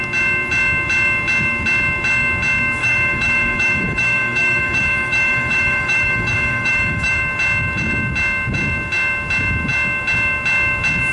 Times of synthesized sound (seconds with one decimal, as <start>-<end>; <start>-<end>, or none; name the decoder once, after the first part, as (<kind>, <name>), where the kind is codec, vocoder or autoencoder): 2.8-7.2 (autoencoder, DAC-VAE)